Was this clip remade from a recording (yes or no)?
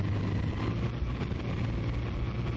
no